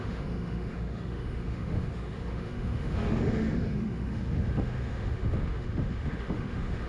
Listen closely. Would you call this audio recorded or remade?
remade